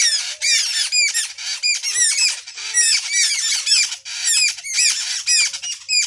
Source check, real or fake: real